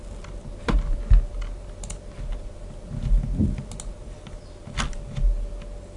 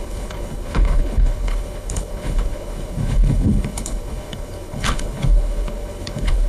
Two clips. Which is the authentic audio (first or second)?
first